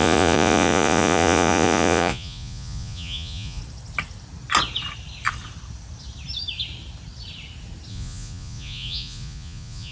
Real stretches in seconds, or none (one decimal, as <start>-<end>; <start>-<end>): 3.6-7.9